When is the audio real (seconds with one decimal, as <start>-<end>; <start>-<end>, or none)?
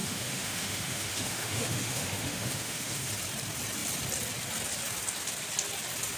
3.1-6.2